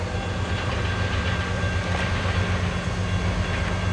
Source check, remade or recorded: recorded